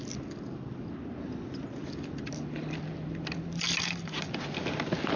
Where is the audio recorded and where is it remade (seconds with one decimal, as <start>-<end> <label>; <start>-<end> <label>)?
0.0-1.8 recorded; 1.8-3.4 remade; 3.4-5.2 recorded